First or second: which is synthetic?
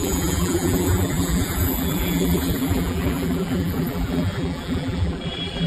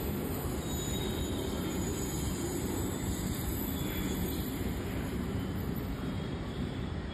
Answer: first